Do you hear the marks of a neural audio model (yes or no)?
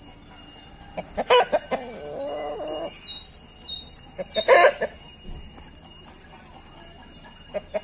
no